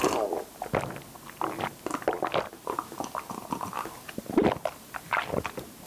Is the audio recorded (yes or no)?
yes